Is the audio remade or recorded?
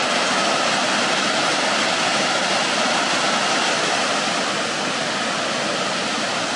recorded